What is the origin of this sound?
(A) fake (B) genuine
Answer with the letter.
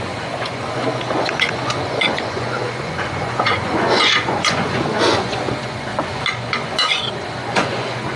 A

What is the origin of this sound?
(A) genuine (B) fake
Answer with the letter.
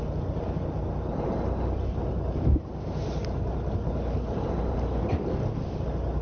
A